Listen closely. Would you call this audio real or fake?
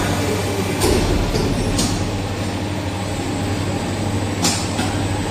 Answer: real